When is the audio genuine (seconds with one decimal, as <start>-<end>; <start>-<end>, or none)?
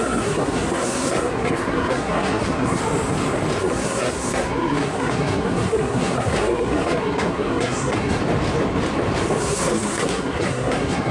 2.8-3.6; 8.2-9.4